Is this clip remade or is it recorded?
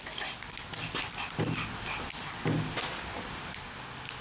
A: recorded